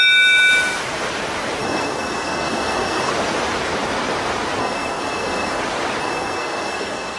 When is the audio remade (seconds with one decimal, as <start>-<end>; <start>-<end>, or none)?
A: 1.6-3.1; 4.6-5.6; 6.0-7.2